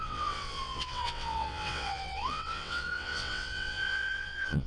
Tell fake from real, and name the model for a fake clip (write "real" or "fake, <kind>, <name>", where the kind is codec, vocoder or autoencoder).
fake, vocoder, WaveNeXt